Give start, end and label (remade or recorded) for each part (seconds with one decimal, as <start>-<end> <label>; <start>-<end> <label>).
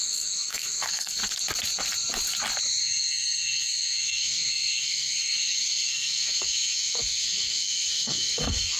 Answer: 0.0-1.2 remade; 1.2-2.8 recorded; 2.8-8.8 remade